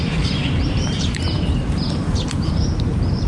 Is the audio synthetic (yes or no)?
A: yes